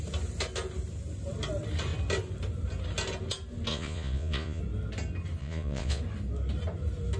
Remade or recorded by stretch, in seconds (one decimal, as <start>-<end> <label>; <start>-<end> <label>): 0.0-3.7 recorded; 3.7-4.6 remade; 4.6-5.4 recorded; 5.4-6.0 remade; 6.0-7.2 recorded